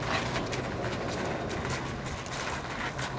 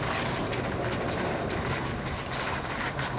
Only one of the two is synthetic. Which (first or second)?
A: second